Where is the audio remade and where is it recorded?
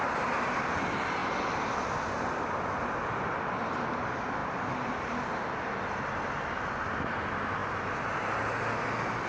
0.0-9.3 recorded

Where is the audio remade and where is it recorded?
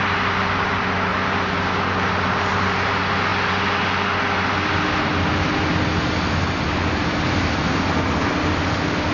0.0-9.1 recorded